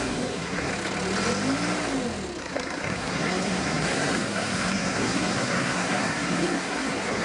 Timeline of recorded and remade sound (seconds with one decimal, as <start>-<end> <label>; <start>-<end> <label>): 0.0-0.7 remade; 0.7-2.4 recorded; 2.4-7.2 remade